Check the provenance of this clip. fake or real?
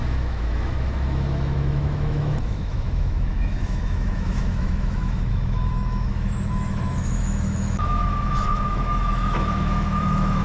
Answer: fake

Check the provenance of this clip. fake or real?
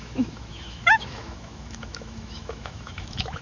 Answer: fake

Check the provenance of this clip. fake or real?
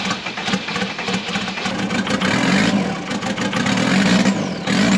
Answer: real